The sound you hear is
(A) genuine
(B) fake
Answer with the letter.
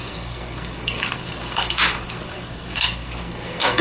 B